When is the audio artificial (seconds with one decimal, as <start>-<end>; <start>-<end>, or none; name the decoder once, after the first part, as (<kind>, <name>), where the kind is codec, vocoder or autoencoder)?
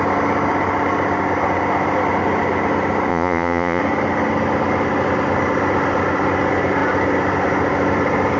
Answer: 3.1-3.8 (vocoder, Vocos)